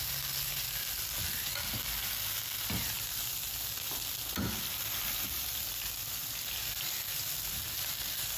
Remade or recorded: recorded